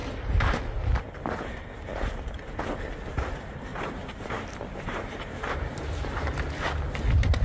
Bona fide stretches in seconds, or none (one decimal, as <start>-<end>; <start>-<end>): 0.6-3.7; 6.3-7.4